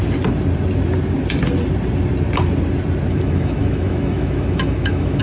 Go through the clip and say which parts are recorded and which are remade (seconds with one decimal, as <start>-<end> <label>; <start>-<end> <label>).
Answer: 0.0-3.1 recorded; 3.1-5.2 remade